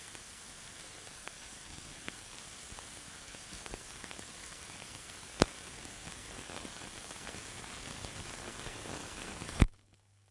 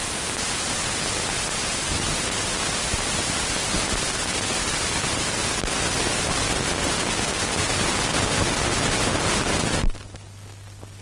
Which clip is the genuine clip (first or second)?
second